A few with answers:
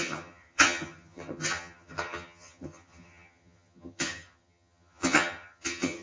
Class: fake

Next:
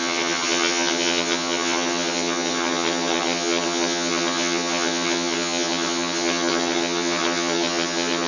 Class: fake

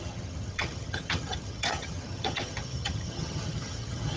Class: fake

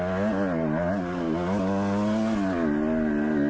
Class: real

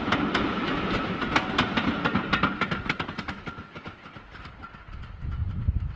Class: real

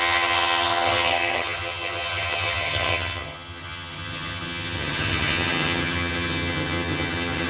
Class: fake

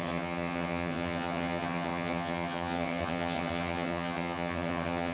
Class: fake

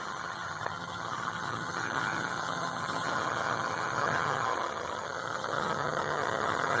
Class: fake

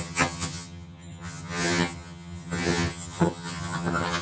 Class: fake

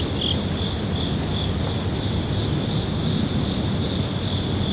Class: real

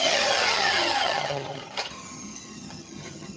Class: fake